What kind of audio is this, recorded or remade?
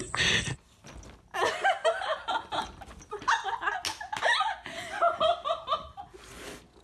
recorded